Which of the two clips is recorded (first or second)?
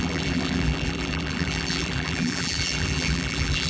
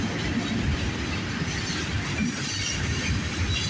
second